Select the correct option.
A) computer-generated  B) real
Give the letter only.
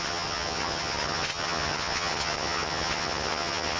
A